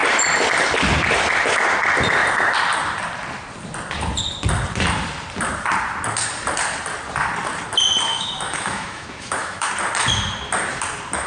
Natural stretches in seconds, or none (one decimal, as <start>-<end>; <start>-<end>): 0.0-8.1; 9.7-11.3